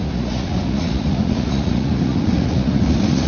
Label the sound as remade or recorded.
remade